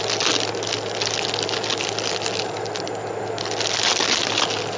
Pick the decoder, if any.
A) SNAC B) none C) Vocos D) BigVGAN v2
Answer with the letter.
B